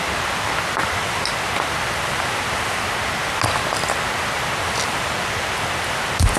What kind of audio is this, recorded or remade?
recorded